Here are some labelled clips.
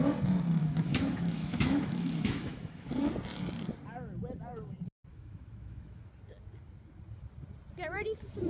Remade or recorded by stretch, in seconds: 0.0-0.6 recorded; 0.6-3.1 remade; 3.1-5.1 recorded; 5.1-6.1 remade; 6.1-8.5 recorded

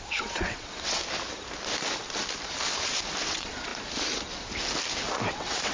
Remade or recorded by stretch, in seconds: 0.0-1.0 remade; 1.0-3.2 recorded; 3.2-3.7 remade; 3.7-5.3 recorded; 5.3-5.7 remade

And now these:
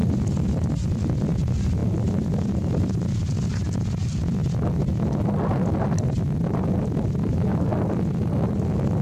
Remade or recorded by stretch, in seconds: 0.0-9.0 recorded